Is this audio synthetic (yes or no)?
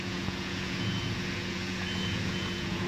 yes